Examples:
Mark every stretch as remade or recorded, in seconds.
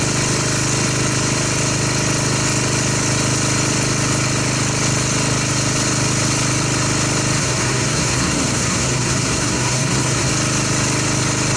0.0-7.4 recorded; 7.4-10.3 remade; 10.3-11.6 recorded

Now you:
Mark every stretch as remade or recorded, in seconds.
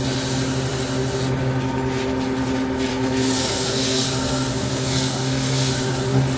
0.0-2.9 recorded; 2.9-5.9 remade; 5.9-6.4 recorded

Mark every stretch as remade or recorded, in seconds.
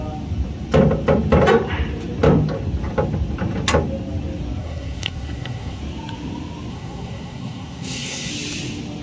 0.0-4.6 recorded; 4.6-5.8 remade; 5.8-6.7 recorded; 6.7-8.3 remade; 8.3-9.0 recorded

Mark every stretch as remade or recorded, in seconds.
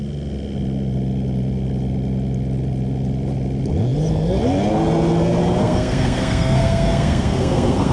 0.0-5.6 recorded; 5.6-7.9 remade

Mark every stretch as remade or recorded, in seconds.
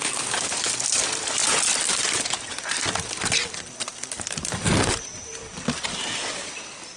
0.0-7.0 recorded